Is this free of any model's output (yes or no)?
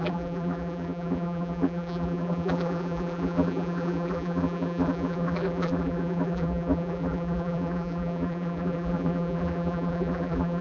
no